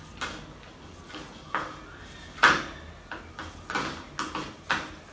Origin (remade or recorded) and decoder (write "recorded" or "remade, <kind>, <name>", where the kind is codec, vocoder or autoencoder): recorded